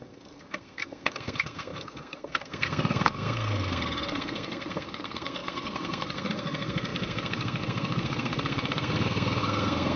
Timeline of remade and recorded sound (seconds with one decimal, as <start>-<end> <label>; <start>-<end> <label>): 0.0-10.0 remade